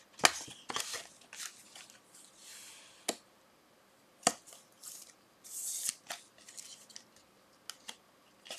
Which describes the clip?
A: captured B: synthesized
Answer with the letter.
A